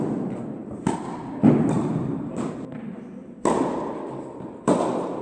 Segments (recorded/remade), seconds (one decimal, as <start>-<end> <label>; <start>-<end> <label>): 0.0-2.3 remade; 2.3-3.9 recorded; 3.9-5.2 remade